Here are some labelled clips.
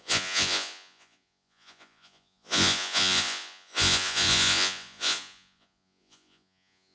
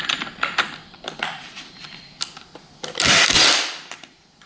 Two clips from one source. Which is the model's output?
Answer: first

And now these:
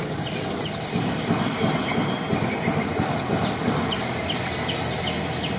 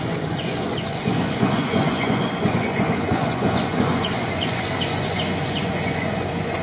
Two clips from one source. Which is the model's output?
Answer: second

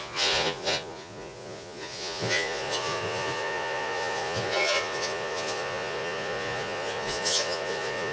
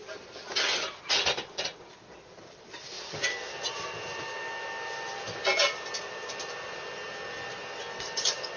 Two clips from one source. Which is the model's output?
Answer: first